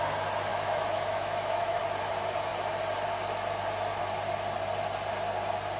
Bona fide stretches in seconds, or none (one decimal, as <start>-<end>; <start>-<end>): 0.0-0.5; 1.8-5.8

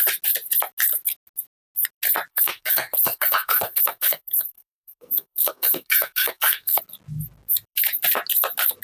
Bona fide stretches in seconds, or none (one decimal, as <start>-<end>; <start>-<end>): 0.0-2.3; 6.8-8.8

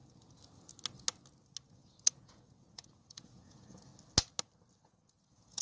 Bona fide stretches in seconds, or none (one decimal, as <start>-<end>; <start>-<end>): 0.0-1.7; 3.9-4.8

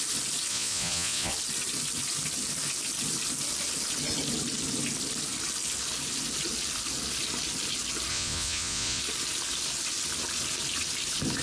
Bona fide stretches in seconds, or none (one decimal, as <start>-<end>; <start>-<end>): 0.0-0.5; 1.3-8.1; 9.0-11.4

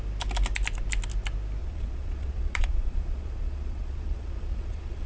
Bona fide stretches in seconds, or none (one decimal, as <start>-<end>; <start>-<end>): 0.0-1.6

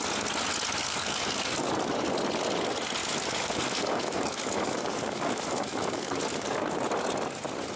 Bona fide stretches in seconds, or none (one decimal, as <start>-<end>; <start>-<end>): 0.0-0.8; 1.7-3.0; 6.7-7.8

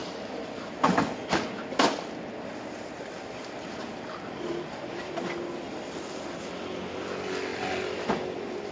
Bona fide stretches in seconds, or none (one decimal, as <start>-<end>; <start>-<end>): 0.0-8.7

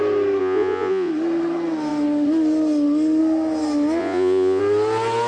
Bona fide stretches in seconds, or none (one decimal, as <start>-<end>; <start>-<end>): 0.0-0.4; 1.1-4.0; 4.6-5.3